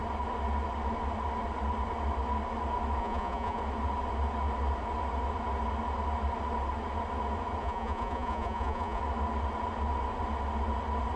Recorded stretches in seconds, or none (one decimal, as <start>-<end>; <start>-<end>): 0.0-3.0; 3.6-7.6; 9.0-11.2